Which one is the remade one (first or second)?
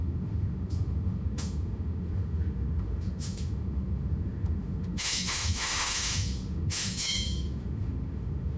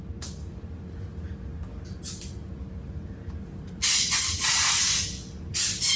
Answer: first